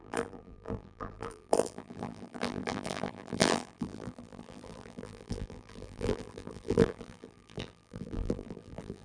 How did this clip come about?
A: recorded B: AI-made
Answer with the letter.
B